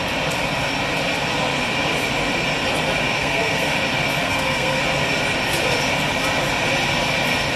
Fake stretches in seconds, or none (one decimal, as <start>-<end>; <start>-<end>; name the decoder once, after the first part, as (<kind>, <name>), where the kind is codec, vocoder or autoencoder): 3.2-3.7 (codec, SNAC); 4.2-4.8

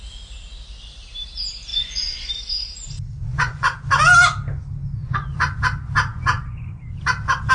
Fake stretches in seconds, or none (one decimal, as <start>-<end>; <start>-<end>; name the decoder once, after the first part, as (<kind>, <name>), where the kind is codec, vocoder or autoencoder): 1.7-2.3 (vocoder, Vocos); 3.3-3.8; 5.0-5.6; 6.1-7.0

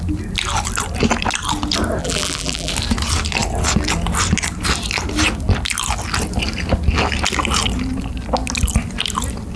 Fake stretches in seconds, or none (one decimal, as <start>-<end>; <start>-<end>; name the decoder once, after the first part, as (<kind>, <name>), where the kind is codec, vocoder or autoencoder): 2.0-2.7 (vocoder, BigVGAN v2)